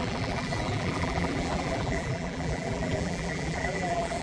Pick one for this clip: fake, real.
fake